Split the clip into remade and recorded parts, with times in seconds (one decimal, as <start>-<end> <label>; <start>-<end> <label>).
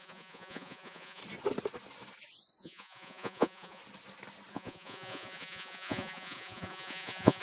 0.0-1.2 remade; 1.2-2.6 recorded; 2.6-3.8 remade; 3.8-4.5 recorded; 4.5-7.4 remade